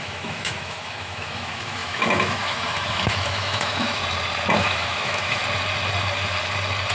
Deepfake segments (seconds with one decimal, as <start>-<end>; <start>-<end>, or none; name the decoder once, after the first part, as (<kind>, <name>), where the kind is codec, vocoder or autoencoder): 0.0-4.0 (autoencoder, DAC-VAE); 4.6-5.4